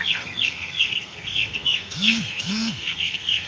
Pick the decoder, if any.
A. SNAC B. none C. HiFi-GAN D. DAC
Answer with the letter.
A